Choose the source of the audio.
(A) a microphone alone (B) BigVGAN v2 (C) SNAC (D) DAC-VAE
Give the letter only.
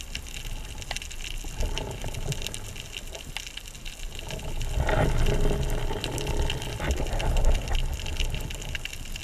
A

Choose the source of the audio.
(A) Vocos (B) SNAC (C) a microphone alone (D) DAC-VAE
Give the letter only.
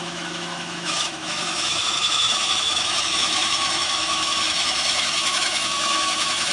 D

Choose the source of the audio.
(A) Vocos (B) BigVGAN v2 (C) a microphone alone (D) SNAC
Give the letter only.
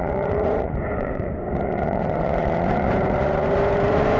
A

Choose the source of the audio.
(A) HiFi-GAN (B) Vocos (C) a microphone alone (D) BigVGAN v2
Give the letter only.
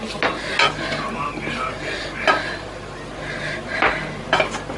C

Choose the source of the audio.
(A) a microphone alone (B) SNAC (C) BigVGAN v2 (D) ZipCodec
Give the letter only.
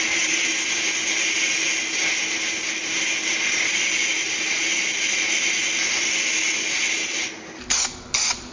A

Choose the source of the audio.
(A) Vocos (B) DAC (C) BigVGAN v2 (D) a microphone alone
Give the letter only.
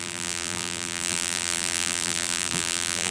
C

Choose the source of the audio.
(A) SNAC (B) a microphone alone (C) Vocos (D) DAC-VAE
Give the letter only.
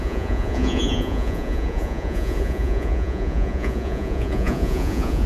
C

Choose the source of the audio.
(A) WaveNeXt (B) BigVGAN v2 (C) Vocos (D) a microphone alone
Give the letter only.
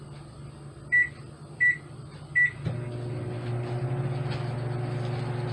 D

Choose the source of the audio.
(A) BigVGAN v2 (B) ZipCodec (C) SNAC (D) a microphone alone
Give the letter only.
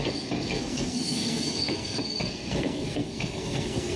C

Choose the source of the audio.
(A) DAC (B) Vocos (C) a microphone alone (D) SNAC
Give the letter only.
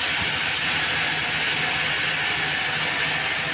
C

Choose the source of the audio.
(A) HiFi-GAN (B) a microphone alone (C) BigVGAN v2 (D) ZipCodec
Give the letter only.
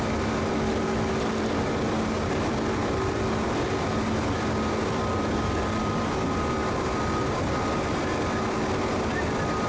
B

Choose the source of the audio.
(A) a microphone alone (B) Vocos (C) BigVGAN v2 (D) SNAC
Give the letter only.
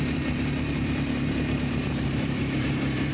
C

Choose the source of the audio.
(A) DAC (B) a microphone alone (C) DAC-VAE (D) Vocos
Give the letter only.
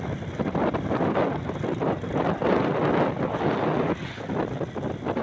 B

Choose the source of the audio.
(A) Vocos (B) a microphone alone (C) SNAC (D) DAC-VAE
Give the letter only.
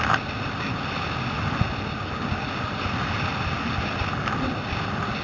B